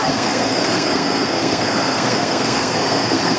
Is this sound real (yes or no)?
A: no